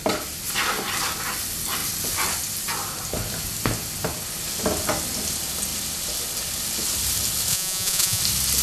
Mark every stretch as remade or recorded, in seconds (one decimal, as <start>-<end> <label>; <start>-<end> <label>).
0.0-7.5 recorded; 7.5-8.2 remade; 8.2-8.6 recorded